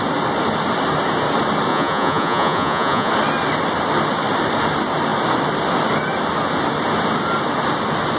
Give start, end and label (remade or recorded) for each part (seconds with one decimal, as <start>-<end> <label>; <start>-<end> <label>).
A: 0.0-1.7 recorded; 1.7-3.1 remade; 3.1-8.2 recorded